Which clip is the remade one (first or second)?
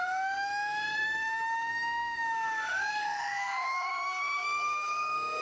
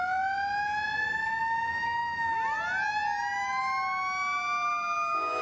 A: first